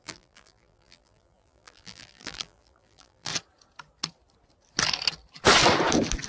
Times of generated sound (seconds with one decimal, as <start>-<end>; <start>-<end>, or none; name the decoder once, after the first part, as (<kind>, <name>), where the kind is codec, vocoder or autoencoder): 0.0-3.3 (vocoder, BigVGAN v2)